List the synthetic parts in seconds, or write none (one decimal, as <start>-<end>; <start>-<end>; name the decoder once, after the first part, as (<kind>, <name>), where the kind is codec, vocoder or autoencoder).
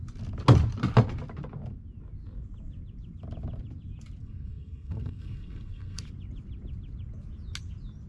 4.2-6.0 (codec, SNAC)